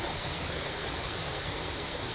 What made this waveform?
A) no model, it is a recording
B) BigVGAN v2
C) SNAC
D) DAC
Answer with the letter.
C